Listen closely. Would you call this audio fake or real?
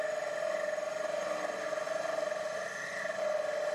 real